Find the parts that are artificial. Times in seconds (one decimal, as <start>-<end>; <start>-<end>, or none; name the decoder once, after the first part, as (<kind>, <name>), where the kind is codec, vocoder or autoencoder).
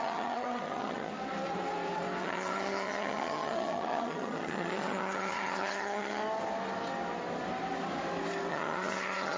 0.0-1.1 (vocoder, HiFi-GAN); 2.2-6.2; 8.5-9.4